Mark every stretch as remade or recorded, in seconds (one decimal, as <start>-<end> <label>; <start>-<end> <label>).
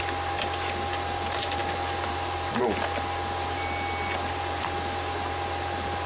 0.0-6.1 recorded